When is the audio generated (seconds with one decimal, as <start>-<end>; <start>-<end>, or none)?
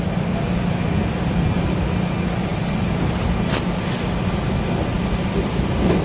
none